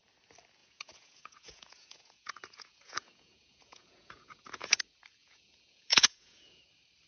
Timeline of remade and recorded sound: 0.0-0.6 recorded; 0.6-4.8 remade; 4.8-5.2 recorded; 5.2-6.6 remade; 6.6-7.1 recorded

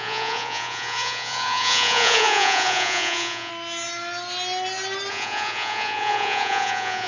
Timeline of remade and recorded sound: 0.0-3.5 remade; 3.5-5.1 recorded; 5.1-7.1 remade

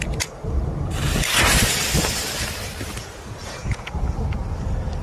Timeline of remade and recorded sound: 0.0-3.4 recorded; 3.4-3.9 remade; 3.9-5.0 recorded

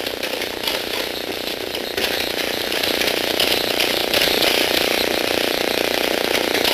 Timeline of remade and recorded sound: 0.0-6.7 recorded

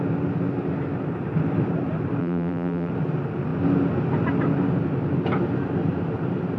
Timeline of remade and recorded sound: 0.0-2.2 recorded; 2.2-2.9 remade; 2.9-6.6 recorded

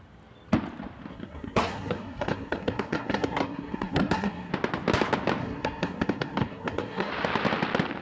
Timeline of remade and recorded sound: 0.0-1.1 recorded; 1.1-4.5 remade; 4.5-5.4 recorded; 5.4-7.1 remade; 7.1-8.0 recorded

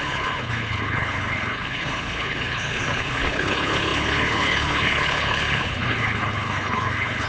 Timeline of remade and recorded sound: 0.0-7.3 remade

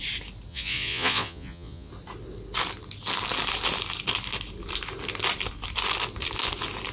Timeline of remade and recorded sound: 0.0-0.5 recorded; 0.5-1.9 remade; 1.9-6.9 recorded